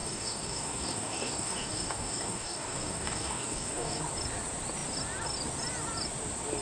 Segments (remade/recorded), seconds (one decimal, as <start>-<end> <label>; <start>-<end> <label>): 0.0-4.0 remade; 4.0-6.6 recorded